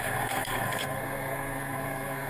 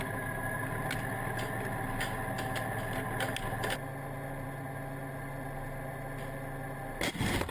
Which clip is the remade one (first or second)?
first